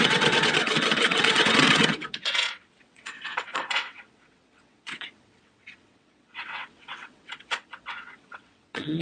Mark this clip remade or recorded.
remade